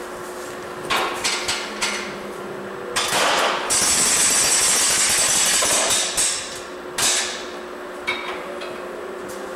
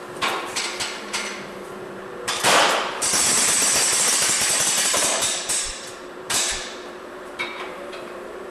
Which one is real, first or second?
first